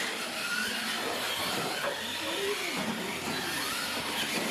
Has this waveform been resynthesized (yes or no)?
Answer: no